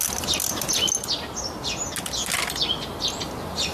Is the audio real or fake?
real